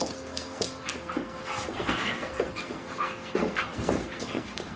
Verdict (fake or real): fake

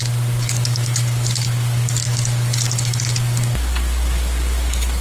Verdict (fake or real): fake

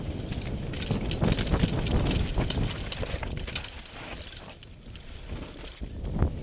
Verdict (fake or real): real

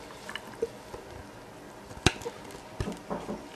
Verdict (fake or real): real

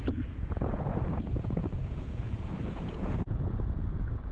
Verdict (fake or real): fake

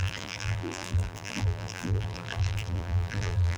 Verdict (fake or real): fake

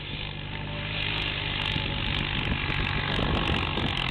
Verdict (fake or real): real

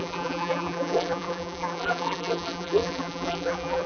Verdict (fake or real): fake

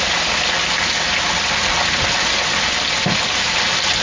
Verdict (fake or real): real